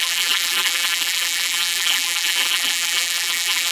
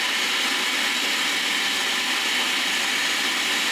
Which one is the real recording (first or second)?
second